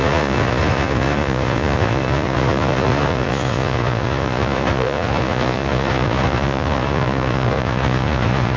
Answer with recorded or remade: remade